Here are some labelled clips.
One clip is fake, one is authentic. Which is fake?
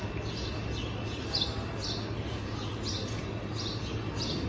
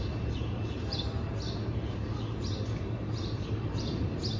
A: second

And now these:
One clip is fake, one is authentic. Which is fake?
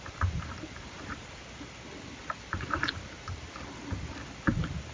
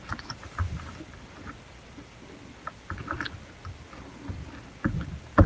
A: first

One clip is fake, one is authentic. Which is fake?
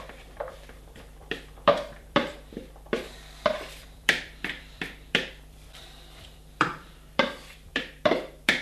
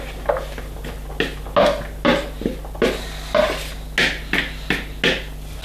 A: first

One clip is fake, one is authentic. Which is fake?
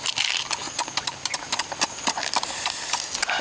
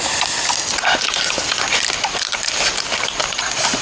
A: second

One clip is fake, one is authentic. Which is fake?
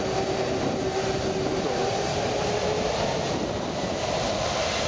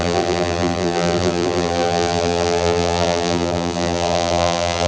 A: second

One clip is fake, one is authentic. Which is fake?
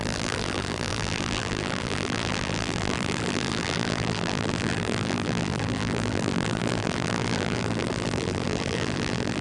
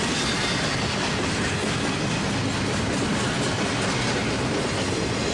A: first